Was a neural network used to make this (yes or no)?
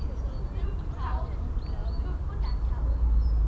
no